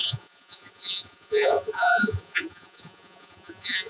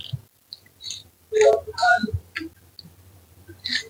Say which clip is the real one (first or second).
second